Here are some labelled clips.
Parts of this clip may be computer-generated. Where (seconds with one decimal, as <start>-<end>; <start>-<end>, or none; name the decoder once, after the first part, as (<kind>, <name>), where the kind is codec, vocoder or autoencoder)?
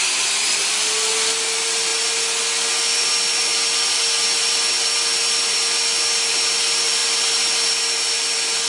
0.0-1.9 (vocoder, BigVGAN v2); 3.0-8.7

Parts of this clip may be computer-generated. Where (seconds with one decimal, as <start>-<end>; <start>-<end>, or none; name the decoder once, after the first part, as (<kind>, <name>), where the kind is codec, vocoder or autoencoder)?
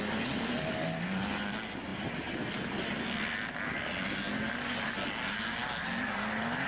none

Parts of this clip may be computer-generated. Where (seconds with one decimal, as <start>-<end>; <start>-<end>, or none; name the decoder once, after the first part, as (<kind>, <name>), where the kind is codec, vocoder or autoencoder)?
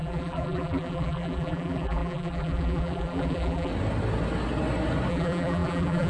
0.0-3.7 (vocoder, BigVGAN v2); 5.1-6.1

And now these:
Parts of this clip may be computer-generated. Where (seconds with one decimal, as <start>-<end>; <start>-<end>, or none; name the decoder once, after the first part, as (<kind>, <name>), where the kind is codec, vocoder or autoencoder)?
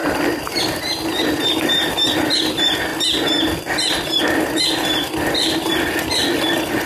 0.0-2.9 (vocoder, BigVGAN v2); 5.1-6.9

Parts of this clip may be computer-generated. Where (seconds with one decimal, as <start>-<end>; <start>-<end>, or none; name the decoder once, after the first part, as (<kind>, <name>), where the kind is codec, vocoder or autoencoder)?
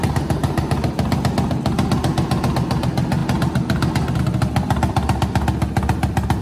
none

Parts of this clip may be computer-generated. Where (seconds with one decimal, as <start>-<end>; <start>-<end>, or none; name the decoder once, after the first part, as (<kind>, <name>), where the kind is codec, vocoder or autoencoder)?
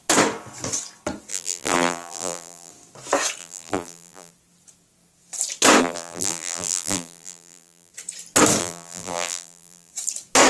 1.3-2.7 (vocoder, BigVGAN v2); 3.4-4.3; 5.8-7.9; 8.6-9.9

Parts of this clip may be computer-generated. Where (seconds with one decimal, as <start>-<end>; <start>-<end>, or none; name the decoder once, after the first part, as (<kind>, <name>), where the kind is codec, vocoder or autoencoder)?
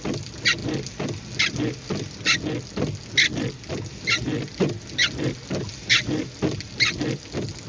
none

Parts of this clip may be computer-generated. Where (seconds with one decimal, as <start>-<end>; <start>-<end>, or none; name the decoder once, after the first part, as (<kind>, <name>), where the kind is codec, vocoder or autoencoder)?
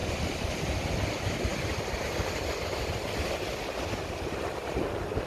none